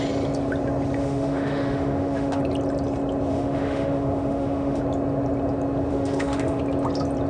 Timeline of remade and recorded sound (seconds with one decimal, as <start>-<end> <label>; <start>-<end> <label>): 0.0-1.0 recorded; 1.0-2.4 remade; 2.4-3.3 recorded; 3.3-4.8 remade; 4.8-5.9 recorded; 5.9-6.6 remade; 6.6-7.3 recorded